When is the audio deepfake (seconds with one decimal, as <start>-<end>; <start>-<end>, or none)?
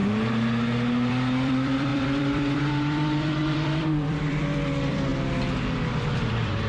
1.1-5.1; 5.9-6.7